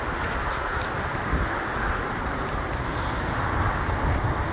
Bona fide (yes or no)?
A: yes